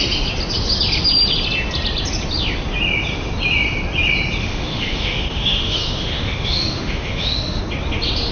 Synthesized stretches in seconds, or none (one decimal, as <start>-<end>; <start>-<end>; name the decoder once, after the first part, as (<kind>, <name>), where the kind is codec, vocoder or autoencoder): 4.4-7.6 (autoencoder, DAC-VAE)